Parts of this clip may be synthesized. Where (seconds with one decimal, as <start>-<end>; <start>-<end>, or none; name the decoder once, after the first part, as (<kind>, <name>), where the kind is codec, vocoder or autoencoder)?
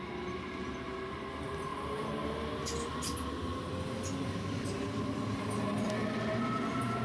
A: none